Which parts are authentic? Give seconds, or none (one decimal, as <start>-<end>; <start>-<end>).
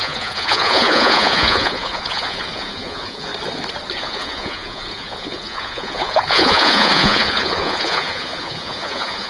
3.3-3.9